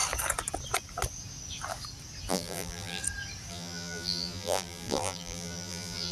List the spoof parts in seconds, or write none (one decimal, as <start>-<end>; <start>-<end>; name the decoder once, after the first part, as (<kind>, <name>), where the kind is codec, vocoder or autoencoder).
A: 2.3-3.0 (vocoder, BigVGAN v2); 3.5-6.1